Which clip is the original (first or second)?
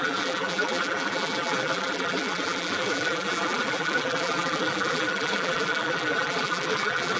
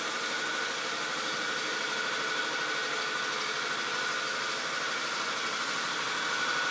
second